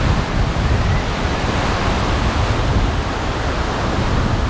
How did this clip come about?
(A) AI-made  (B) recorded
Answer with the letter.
B